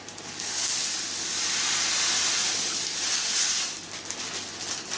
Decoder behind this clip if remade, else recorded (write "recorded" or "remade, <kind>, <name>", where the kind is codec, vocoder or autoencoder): recorded